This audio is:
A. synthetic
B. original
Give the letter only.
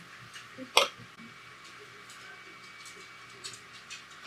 B